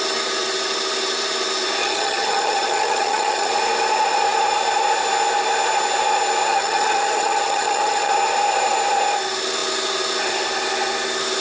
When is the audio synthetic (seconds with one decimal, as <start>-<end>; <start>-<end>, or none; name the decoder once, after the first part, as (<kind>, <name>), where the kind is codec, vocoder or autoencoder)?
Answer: 1.8-3.5 (vocoder, HiFi-GAN); 6.5-8.1